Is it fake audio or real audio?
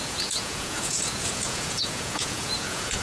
fake